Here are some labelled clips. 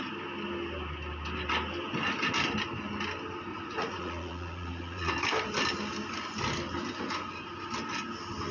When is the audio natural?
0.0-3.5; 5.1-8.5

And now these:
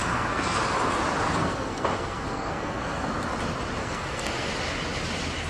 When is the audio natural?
0.6-1.4; 3.1-3.8; 4.5-5.5